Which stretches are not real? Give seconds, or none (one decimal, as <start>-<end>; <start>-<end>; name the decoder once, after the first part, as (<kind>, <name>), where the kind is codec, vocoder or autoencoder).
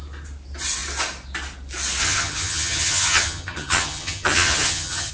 2.0-5.1 (vocoder, HiFi-GAN)